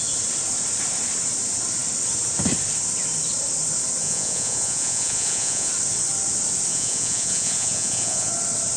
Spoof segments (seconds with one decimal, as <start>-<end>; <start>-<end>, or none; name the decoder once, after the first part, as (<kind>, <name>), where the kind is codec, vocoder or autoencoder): 4.0-5.7 (vocoder, Vocos); 6.7-8.3

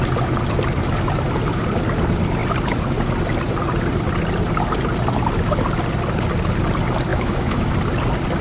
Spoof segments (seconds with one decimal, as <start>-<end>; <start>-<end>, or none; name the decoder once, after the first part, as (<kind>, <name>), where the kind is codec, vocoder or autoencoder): 7.1-7.7 (autoencoder, DAC-VAE)